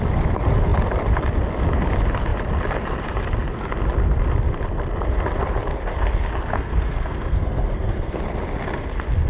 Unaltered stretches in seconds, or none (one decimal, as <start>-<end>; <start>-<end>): 0.0-6.5; 8.2-9.3